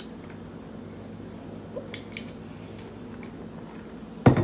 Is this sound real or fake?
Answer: real